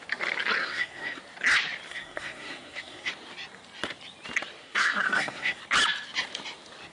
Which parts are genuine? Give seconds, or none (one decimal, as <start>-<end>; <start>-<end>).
0.0-0.6; 1.2-1.9; 3.1-4.6; 5.6-6.9

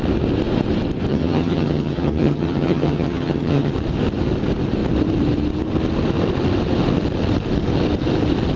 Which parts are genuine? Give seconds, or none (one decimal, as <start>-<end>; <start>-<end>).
0.0-1.1; 3.7-8.6

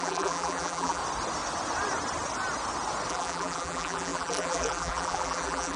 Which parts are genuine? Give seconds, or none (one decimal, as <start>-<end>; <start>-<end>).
1.0-3.1

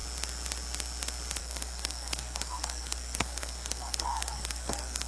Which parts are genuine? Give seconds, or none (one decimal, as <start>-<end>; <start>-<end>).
0.0-1.4

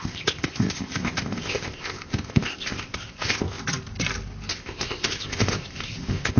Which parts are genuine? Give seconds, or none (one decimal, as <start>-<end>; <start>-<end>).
3.6-4.5

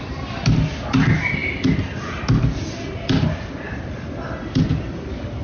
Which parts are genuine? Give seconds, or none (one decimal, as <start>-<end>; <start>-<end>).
0.0-5.4

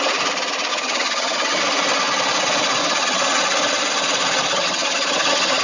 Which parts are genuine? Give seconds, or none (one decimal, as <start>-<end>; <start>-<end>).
0.0-0.7; 1.6-2.8; 3.4-4.5